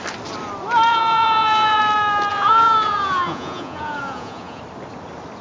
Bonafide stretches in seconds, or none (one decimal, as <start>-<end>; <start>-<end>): 0.0-0.9; 1.8-2.3; 4.6-5.4